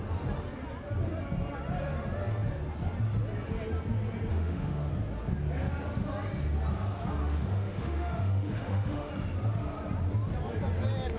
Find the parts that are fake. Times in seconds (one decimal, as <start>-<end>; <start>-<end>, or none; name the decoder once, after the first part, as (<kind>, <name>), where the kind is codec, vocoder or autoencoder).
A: 4.3-4.9 (autoencoder, DAC-VAE); 7.2-9.1